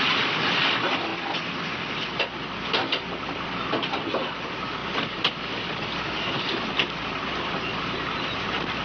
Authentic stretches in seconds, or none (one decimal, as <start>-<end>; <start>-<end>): 0.0-8.8